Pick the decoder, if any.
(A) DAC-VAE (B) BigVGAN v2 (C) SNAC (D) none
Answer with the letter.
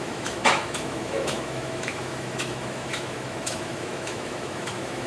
A